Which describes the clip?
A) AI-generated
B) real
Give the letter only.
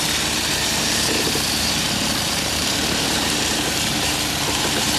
A